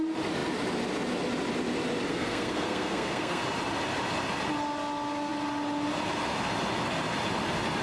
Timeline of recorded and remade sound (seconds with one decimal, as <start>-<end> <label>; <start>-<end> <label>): 0.0-2.1 recorded; 2.1-3.4 remade; 3.4-7.8 recorded